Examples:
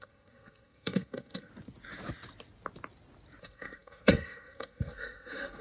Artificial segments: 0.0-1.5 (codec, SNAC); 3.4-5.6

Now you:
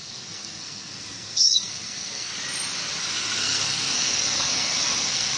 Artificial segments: 0.0-2.3 (codec, SNAC); 3.0-5.4

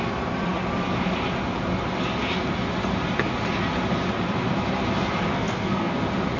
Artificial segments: 5.3-5.9 (codec, SNAC)

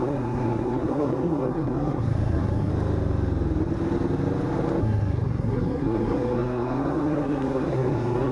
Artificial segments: 0.0-2.7 (codec, SNAC); 4.8-8.3

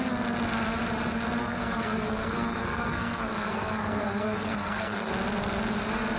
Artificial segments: 1.4-5.1 (codec, SNAC)